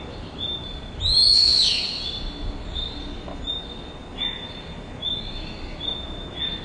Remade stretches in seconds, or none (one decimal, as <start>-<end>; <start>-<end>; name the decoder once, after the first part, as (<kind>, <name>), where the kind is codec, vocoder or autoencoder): none